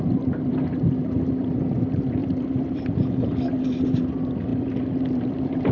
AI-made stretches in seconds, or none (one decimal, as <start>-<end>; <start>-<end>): none